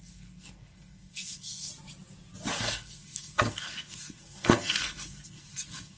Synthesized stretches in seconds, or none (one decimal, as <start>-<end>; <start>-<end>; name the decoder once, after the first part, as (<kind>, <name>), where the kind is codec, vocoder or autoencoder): 0.0-1.7 (codec, SNAC); 2.6-6.0